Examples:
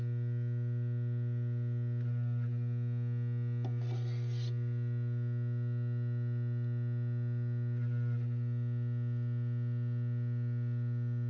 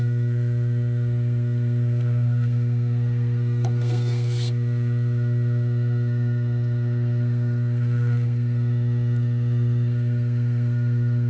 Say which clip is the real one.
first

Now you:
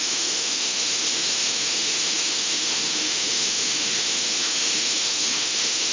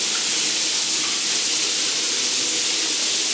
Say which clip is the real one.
second